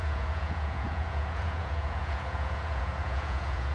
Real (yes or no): no